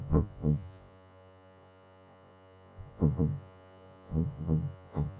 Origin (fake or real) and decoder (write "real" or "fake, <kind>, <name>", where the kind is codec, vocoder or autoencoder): fake, vocoder, Vocos